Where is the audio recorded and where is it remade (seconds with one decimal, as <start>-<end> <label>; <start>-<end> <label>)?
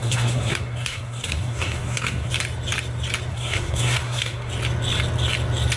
0.0-2.3 remade; 2.3-3.3 recorded; 3.3-4.5 remade; 4.5-5.8 recorded